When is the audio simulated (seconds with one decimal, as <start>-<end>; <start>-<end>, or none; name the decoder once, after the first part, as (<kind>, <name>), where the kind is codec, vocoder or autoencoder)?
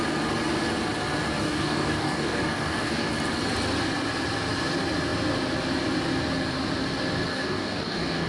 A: 1.4-3.1 (codec, DAC); 7.3-8.3